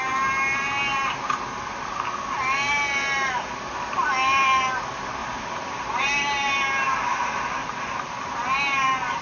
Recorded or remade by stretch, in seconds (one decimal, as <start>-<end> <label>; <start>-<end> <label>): 0.0-5.2 recorded; 5.2-5.8 remade; 5.8-7.6 recorded; 7.6-8.2 remade; 8.2-9.2 recorded